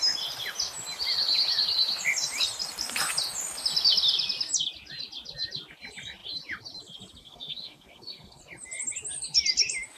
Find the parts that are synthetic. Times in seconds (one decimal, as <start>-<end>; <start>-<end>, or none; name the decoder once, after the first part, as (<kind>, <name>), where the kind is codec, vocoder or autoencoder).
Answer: 7.2-8.4 (codec, SNAC)